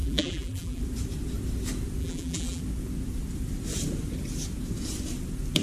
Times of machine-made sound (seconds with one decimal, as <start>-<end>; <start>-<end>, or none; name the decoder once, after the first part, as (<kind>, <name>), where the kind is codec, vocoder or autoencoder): 0.0-0.8 (vocoder, BigVGAN v2); 2.0-2.6